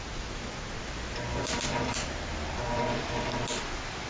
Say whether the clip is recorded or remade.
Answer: recorded